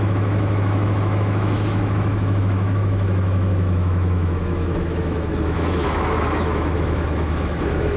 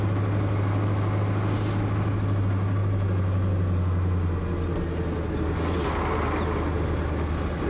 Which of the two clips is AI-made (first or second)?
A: first